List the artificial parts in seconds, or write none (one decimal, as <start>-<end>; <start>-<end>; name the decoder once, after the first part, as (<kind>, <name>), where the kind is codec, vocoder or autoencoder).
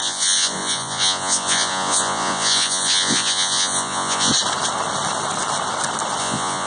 0.0-4.3 (vocoder, Vocos); 6.2-6.7